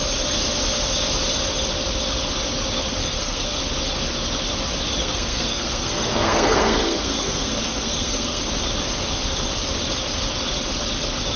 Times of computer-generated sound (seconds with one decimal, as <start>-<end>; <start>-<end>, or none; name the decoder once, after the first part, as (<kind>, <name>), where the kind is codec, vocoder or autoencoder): 3.0-3.6 (codec, SNAC); 5.0-8.4